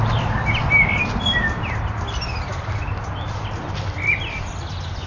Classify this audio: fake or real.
real